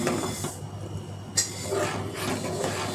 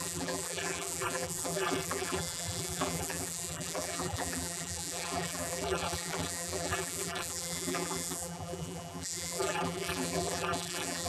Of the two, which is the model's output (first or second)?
second